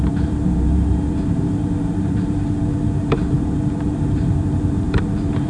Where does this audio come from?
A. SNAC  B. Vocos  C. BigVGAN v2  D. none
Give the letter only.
C